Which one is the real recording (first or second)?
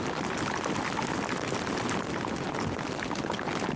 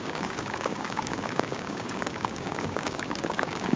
first